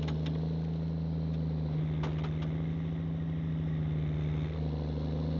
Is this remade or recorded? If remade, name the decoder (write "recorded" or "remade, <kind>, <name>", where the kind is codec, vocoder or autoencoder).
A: recorded